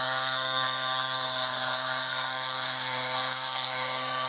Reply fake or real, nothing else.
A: fake